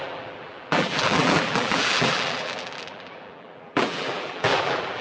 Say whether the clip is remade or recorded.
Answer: remade